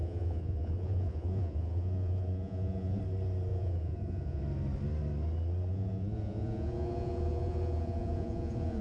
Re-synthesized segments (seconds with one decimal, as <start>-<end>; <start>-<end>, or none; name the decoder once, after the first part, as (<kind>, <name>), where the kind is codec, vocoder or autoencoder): 0.0-3.0 (vocoder, Vocos); 3.5-4.4; 5.7-8.8